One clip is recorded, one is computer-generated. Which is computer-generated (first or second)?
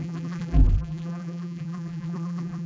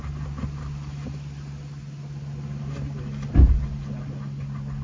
first